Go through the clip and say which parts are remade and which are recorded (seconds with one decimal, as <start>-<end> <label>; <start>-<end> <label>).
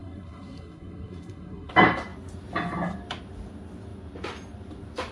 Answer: 0.0-1.7 remade; 1.7-5.1 recorded